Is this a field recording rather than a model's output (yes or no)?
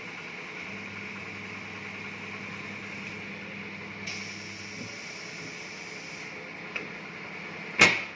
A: yes